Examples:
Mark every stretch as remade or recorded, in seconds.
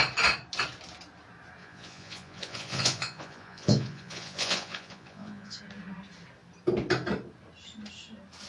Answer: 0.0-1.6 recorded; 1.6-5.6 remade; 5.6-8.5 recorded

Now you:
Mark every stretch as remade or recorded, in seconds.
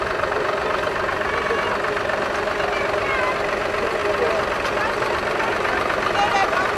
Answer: 0.0-6.8 recorded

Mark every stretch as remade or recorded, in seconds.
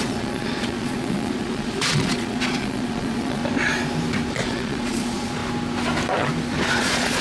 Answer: 0.0-3.4 remade; 3.4-4.3 recorded; 4.3-5.4 remade; 5.4-6.8 recorded; 6.8-7.2 remade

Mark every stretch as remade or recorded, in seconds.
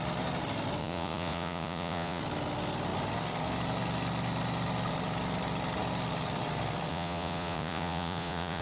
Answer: 0.0-0.8 recorded; 0.8-2.2 remade; 2.2-6.9 recorded; 6.9-8.6 remade